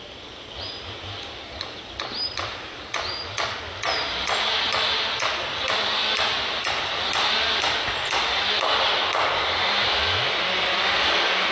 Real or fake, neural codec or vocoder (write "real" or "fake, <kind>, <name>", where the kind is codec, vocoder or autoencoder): real